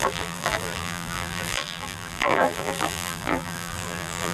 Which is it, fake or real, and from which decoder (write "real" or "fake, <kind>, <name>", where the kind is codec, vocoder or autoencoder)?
fake, vocoder, BigVGAN v2